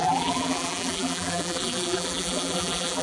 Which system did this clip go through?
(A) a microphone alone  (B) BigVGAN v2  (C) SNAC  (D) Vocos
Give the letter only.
B